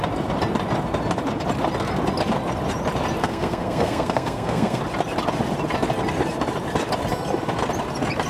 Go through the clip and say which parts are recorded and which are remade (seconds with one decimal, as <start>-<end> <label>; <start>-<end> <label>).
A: 0.0-3.2 recorded; 3.2-4.8 remade; 4.8-8.3 recorded